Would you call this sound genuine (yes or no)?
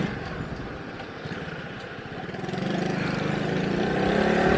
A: yes